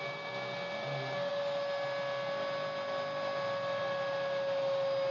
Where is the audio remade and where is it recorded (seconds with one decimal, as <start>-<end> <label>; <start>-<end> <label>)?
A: 0.0-5.1 recorded